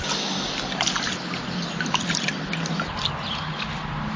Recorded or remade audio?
recorded